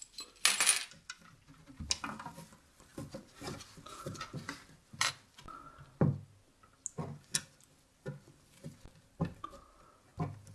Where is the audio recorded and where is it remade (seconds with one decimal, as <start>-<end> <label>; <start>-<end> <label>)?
0.0-2.9 recorded; 2.9-5.1 remade; 5.1-10.5 recorded